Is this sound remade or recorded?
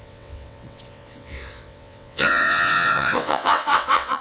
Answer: remade